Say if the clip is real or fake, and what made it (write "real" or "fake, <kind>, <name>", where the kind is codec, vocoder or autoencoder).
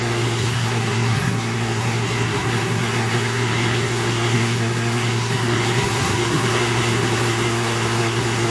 fake, codec, SNAC